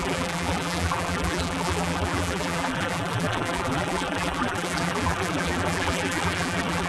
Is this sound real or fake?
fake